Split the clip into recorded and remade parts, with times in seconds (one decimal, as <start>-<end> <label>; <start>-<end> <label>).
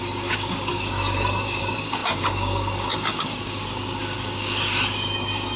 0.0-5.6 remade